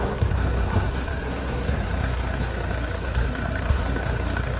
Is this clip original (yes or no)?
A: no